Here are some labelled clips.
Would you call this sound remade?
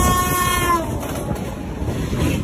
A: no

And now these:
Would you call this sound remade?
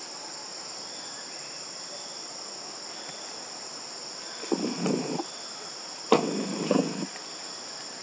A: no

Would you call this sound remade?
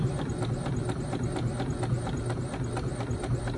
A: no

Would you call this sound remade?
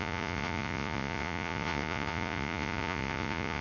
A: yes